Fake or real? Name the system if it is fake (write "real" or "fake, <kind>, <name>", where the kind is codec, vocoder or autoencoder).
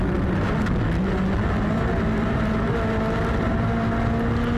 real